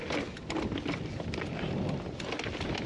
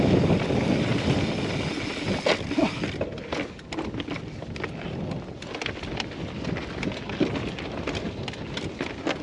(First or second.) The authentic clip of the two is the second